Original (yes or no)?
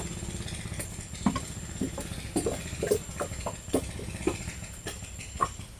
yes